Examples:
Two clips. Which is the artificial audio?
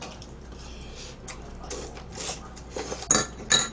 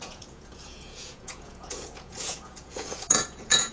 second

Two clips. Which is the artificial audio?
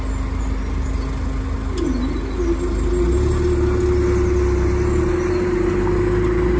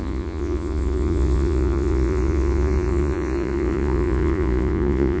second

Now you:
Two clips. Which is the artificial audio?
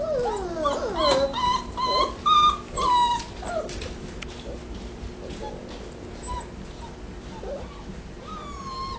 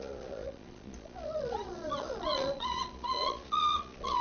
second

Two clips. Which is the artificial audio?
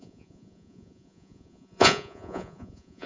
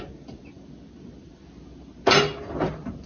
first